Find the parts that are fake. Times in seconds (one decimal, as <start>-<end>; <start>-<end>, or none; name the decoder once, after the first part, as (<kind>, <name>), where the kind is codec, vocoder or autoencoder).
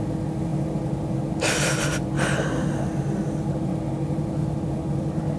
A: none